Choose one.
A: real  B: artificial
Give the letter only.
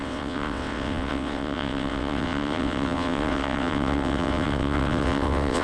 B